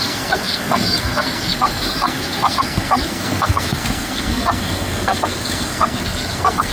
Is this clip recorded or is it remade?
remade